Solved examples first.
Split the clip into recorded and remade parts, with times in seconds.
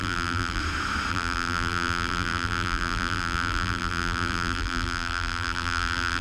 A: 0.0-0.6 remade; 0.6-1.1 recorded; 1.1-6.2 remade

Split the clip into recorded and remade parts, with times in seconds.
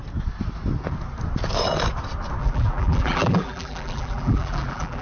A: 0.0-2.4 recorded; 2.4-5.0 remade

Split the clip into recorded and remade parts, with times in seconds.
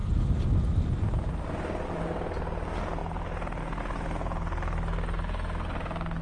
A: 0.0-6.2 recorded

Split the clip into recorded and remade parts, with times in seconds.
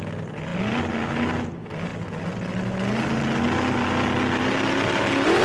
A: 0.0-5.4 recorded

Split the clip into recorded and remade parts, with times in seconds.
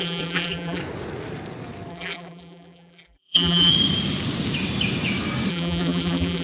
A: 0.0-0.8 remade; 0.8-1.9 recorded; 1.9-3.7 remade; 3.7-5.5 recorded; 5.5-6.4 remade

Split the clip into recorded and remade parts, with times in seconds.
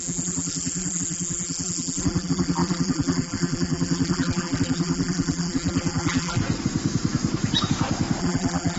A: 0.0-6.4 remade; 6.4-8.2 recorded; 8.2-8.8 remade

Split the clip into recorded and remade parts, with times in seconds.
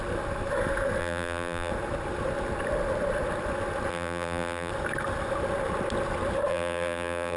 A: 0.0-1.0 recorded; 1.0-1.7 remade; 1.7-3.9 recorded; 3.9-4.7 remade; 4.7-6.5 recorded; 6.5-7.4 remade